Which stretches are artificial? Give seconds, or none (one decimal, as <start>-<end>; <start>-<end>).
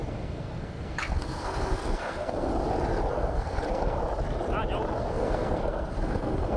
0.0-2.5; 3.1-4.0; 5.0-6.6